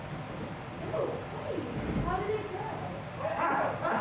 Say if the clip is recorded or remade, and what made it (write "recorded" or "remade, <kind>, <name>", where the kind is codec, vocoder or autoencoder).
recorded